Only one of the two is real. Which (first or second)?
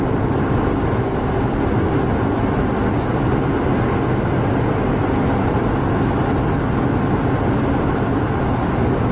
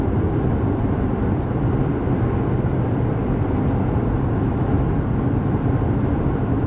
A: first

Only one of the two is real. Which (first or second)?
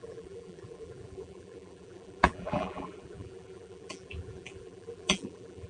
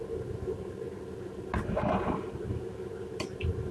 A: second